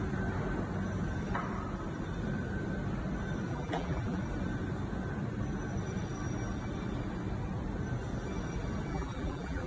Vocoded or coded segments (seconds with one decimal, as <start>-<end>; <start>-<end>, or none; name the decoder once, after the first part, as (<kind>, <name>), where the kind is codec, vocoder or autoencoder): 3.5-4.2 (vocoder, BigVGAN v2); 8.9-9.7